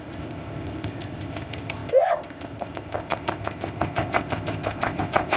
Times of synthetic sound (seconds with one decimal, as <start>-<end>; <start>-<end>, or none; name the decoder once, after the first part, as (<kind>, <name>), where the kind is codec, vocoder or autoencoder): 0.0-5.4 (codec, ZipCodec)